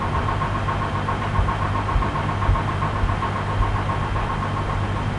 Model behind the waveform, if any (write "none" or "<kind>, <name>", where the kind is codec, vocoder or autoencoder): none